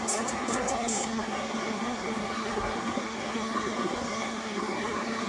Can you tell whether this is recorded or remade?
remade